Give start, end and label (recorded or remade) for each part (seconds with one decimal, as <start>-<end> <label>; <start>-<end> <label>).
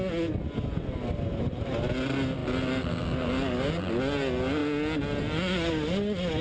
0.0-6.4 recorded